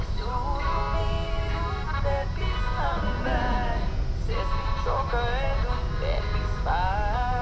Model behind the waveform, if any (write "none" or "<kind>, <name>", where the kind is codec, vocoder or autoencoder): none